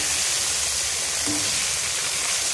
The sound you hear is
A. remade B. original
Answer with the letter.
B